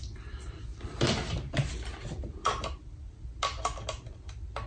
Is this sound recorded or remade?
recorded